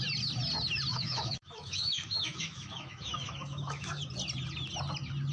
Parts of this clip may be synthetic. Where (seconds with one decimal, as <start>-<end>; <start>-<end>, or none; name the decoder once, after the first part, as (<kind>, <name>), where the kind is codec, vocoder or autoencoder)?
0.9-4.0 (autoencoder, DAC-VAE)